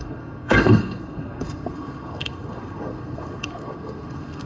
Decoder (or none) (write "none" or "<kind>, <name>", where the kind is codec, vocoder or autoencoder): codec, SNAC